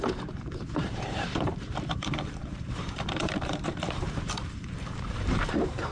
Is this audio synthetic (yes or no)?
yes